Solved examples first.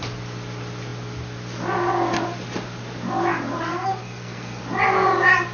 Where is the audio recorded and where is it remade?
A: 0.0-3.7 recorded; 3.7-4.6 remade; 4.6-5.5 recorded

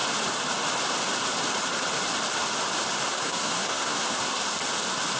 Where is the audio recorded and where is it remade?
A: 0.0-3.1 recorded; 3.1-4.4 remade; 4.4-5.2 recorded

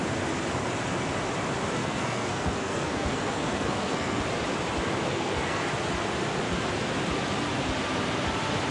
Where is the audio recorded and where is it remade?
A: 0.0-1.8 recorded; 1.8-4.2 remade; 4.2-5.1 recorded; 5.1-5.7 remade; 5.7-8.7 recorded

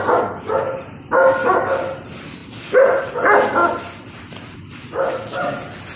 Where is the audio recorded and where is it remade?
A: 0.0-6.0 recorded

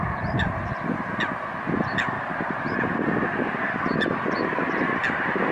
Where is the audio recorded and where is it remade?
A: 0.0-5.5 recorded

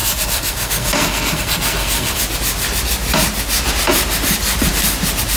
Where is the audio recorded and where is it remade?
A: 0.0-2.2 remade; 2.2-5.4 recorded